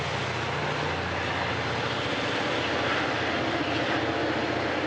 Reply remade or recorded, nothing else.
recorded